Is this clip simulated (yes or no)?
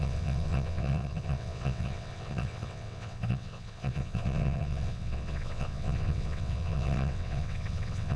yes